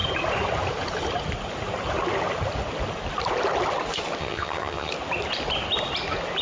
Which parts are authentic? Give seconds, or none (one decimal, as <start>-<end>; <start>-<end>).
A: 0.0-4.2; 4.9-6.4